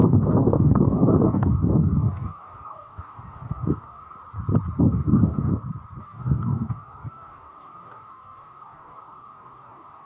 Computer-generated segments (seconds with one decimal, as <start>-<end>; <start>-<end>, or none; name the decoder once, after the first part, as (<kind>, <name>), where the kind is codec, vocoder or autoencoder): 0.0-4.2 (codec, DAC); 4.8-5.5; 6.0-10.1